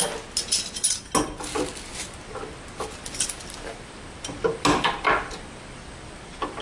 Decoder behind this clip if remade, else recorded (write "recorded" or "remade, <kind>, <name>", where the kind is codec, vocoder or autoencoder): recorded